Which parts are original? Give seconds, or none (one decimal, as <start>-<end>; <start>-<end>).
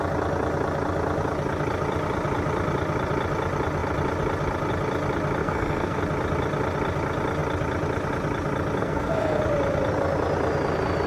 0.0-5.4; 6.0-8.8; 9.4-11.1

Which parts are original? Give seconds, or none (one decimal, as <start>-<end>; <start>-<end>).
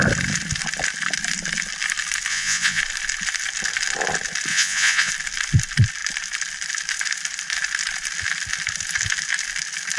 0.0-2.3; 2.8-4.5; 5.1-10.0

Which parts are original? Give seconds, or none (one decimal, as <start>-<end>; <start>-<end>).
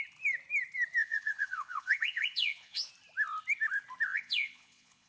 0.0-1.0; 2.9-4.1